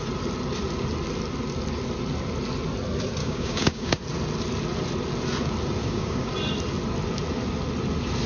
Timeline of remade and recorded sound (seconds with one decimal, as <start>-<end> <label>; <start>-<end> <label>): 0.0-3.2 recorded; 3.2-4.0 remade; 4.0-5.8 recorded; 5.8-6.3 remade; 6.3-8.3 recorded